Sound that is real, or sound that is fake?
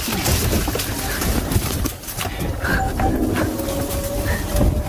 real